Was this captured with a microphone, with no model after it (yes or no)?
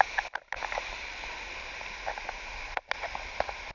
yes